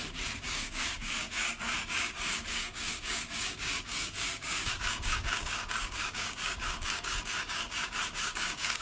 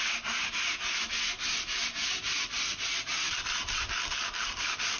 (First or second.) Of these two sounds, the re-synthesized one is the first